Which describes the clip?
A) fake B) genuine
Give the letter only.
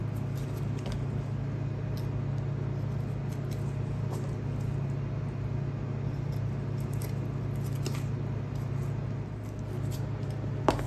B